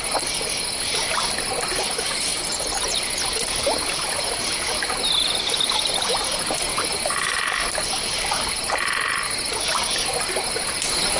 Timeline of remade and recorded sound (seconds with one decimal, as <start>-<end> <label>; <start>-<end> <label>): 0.0-11.2 recorded